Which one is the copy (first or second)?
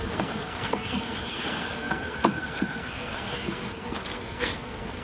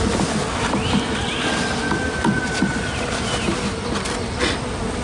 first